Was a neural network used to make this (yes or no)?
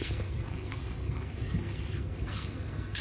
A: yes